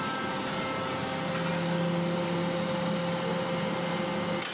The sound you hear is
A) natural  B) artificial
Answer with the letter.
A